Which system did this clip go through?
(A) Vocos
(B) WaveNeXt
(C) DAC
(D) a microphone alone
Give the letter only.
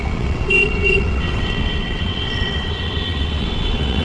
B